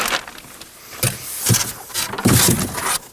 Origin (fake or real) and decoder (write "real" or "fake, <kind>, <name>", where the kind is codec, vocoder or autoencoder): real